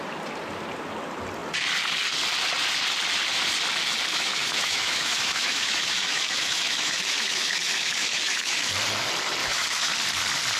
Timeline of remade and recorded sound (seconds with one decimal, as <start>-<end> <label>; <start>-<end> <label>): 0.0-4.1 recorded; 4.1-8.7 remade; 8.7-9.4 recorded; 9.4-9.9 remade; 9.9-10.6 recorded